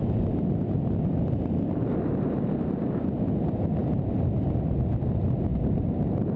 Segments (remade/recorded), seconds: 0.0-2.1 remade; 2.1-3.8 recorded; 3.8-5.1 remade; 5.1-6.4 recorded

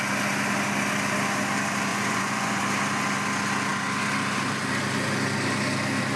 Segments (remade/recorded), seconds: 0.0-1.9 recorded; 1.9-2.6 remade; 2.6-6.2 recorded

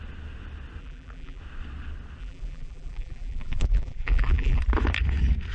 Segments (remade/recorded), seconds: 0.0-0.8 recorded; 0.8-1.4 remade; 1.4-2.2 recorded; 2.2-4.6 remade; 4.6-5.5 recorded

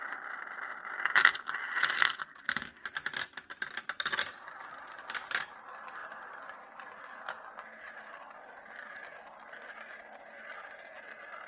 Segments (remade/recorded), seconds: 0.0-11.5 recorded

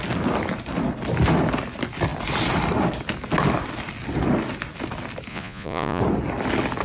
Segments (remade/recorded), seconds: 0.0-5.3 recorded; 5.3-6.0 remade; 6.0-6.8 recorded

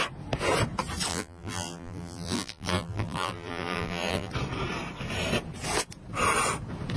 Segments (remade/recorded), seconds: 0.0-1.1 recorded; 1.1-4.3 remade; 4.3-7.0 recorded

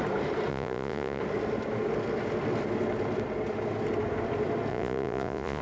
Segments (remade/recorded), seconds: 0.0-0.5 recorded; 0.5-1.2 remade; 1.2-4.7 recorded; 4.7-5.6 remade

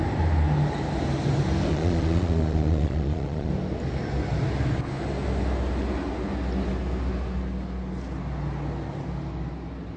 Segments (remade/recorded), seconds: 0.0-1.7 recorded; 1.7-3.5 remade; 3.5-10.0 recorded